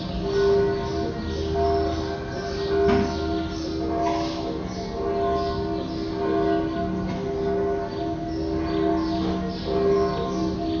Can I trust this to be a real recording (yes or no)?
yes